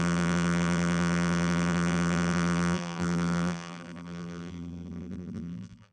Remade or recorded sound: remade